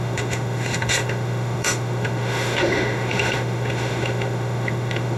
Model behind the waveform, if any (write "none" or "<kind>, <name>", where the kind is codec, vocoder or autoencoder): autoencoder, DAC-VAE